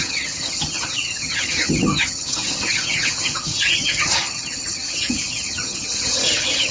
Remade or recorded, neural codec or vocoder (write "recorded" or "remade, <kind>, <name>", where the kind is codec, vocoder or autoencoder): remade, vocoder, HiFi-GAN